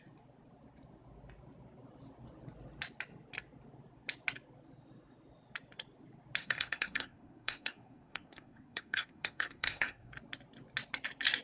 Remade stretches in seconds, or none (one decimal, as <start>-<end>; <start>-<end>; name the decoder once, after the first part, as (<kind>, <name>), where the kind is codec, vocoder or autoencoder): 6.4-10.1 (codec, SNAC)